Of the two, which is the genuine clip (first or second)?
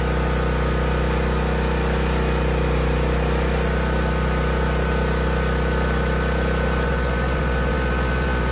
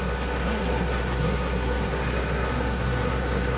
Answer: first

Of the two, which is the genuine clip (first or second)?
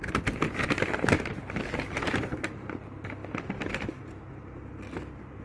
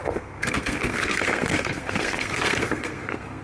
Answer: first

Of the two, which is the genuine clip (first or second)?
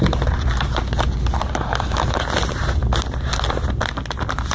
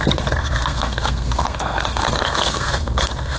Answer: first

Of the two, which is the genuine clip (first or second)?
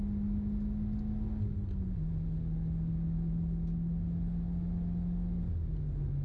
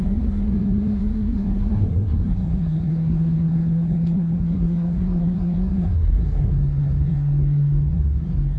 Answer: first